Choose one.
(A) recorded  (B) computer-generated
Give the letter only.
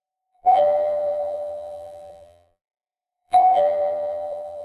B